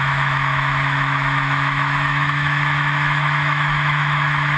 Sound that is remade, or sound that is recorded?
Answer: remade